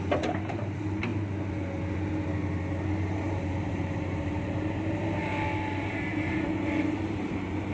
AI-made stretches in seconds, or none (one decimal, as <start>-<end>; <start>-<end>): 0.0-1.1; 2.9-5.2; 6.1-7.7